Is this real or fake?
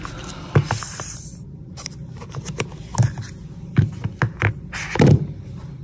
real